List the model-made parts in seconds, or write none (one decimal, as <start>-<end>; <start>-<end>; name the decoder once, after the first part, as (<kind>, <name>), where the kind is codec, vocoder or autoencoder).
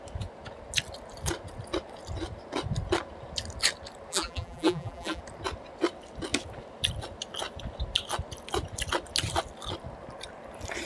4.1-5.2 (vocoder, BigVGAN v2)